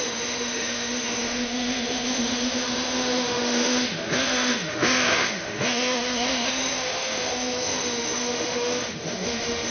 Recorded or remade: remade